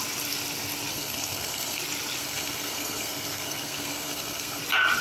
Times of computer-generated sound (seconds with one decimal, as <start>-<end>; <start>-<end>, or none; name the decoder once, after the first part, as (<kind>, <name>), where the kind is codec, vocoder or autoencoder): 0.9-1.8 (codec, SNAC); 2.2-4.6